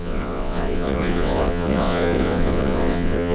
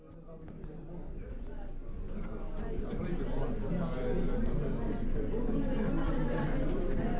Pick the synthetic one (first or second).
first